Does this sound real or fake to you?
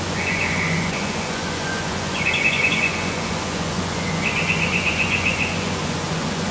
fake